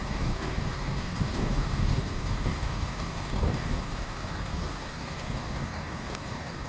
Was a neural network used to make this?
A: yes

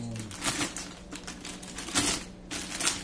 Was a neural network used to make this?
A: no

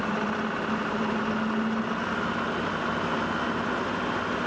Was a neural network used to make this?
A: no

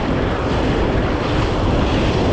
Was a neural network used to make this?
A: no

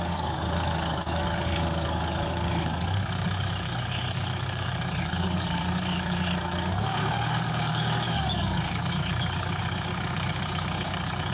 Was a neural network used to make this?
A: yes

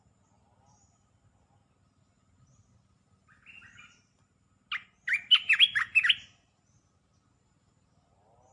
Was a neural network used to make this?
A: no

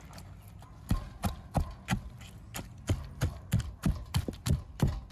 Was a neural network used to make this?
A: no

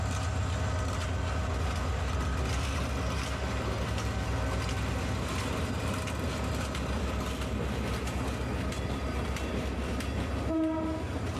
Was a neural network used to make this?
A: no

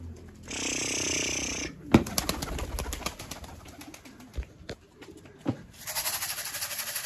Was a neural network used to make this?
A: no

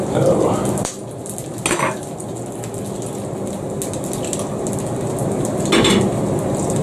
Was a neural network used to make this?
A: no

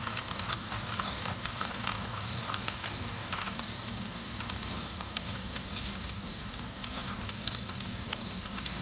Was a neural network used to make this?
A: yes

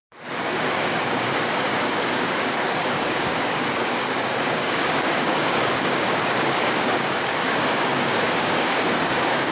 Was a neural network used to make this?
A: yes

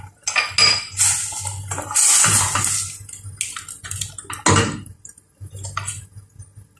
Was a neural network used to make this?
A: no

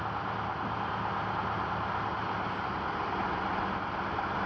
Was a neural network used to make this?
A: no